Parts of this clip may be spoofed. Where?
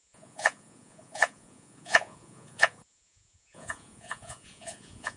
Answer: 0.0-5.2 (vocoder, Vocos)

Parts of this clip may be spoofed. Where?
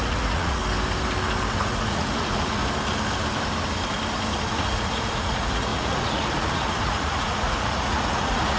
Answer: 0.0-0.6 (vocoder, Vocos); 1.6-2.6; 4.5-8.6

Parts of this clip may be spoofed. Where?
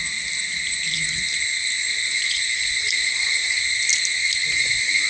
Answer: 2.1-3.6 (vocoder, Vocos); 4.4-5.1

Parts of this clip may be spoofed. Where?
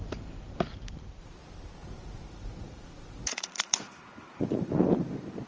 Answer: 1.8-4.9 (vocoder, Vocos)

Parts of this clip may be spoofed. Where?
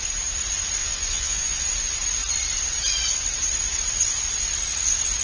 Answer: 0.8-1.6 (vocoder, Vocos)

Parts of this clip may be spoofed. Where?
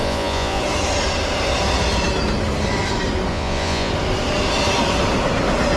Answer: 0.0-0.6 (vocoder, Vocos); 3.3-3.9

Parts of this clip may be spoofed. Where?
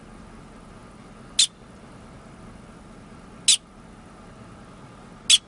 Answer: none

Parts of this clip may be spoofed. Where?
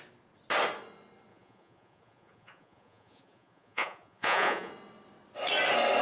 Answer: 1.3-4.7 (vocoder, Vocos)